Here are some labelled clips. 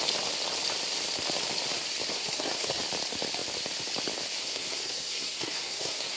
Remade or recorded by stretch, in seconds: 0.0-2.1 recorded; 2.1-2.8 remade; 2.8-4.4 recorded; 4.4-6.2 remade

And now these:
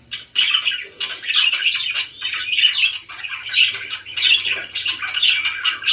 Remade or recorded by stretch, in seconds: 0.0-5.9 recorded

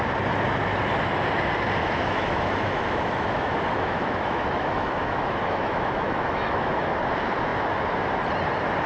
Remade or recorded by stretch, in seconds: 0.0-1.8 recorded; 1.8-6.9 remade; 6.9-8.9 recorded

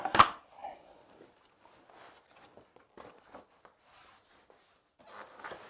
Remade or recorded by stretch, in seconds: 0.0-5.7 recorded

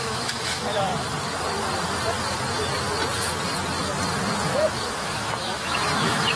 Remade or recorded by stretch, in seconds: 0.0-0.9 remade; 0.9-4.7 recorded; 4.7-6.4 remade

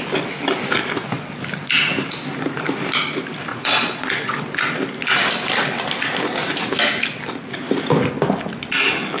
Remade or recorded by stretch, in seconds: 0.0-3.5 recorded; 3.5-4.4 remade; 4.4-9.2 recorded